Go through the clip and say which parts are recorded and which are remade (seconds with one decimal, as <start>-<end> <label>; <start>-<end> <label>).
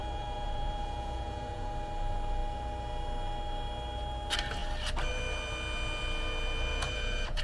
0.0-1.7 remade; 1.7-6.7 recorded; 6.7-7.4 remade